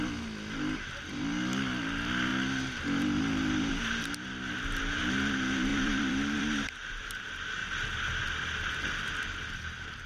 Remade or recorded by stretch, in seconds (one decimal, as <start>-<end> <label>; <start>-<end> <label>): 0.0-5.7 recorded; 5.7-6.9 remade; 6.9-10.1 recorded